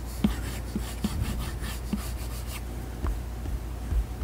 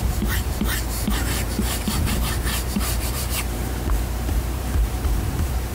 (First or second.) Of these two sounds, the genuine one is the first